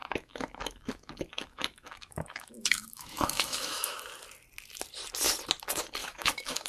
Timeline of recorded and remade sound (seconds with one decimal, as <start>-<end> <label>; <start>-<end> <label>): 0.0-4.0 remade; 4.0-6.0 recorded; 6.0-6.7 remade